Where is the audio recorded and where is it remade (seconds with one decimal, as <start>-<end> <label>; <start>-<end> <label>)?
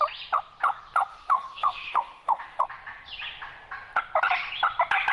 0.0-1.1 recorded; 1.1-2.6 remade; 2.6-5.1 recorded